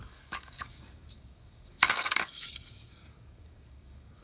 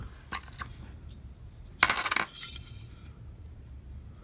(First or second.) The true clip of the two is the second